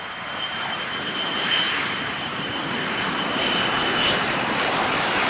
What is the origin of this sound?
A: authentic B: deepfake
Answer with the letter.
B